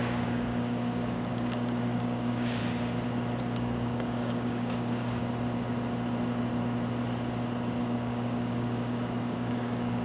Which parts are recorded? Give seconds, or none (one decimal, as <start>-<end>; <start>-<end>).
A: 2.6-3.4; 5.2-7.8